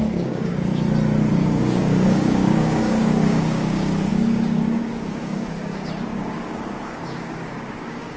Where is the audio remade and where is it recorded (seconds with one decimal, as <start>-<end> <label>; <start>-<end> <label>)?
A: 0.0-0.7 remade; 0.7-1.3 recorded; 1.3-8.2 remade